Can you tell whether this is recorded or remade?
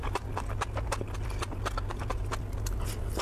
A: recorded